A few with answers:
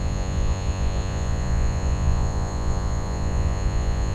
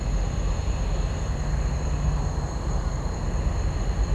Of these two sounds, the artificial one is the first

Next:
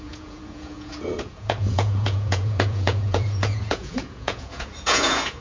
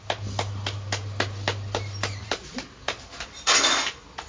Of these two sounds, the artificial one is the first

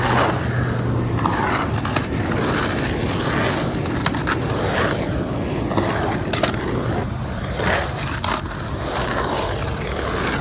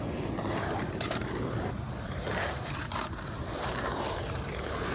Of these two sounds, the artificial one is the second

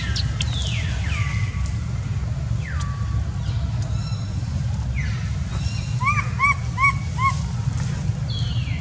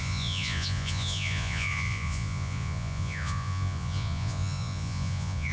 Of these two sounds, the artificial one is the second